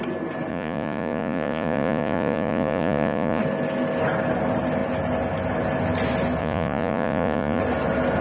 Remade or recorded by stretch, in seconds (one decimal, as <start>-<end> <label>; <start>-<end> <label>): 0.0-0.5 recorded; 0.5-3.4 remade; 3.4-6.4 recorded; 6.4-7.6 remade; 7.6-8.2 recorded